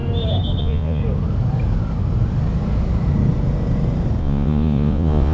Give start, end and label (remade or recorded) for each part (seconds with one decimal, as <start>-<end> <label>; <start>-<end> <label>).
0.0-0.6 recorded; 0.6-1.0 remade; 1.0-4.2 recorded; 4.2-5.3 remade